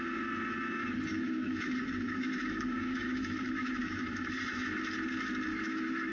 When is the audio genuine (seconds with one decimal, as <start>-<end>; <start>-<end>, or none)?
0.0-1.1; 4.8-5.5